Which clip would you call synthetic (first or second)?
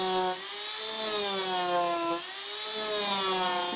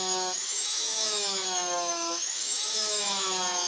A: second